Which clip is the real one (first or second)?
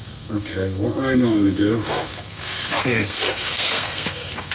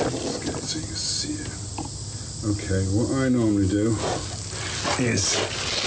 second